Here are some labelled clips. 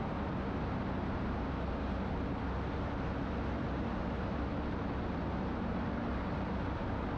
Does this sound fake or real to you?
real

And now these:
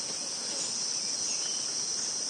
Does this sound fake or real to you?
real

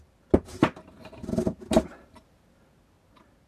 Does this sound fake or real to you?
real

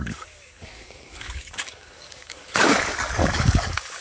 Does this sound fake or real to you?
fake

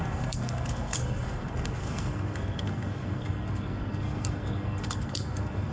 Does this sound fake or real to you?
fake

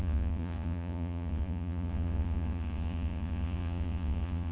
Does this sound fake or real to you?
fake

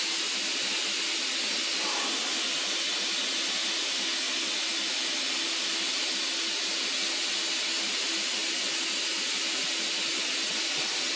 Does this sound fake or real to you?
real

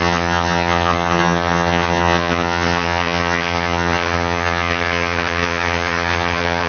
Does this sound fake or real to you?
fake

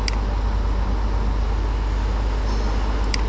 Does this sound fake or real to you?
real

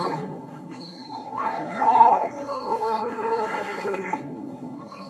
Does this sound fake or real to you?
fake